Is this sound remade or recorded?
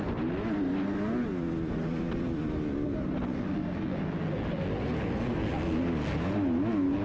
recorded